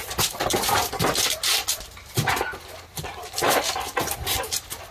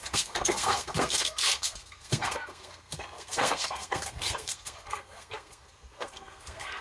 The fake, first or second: second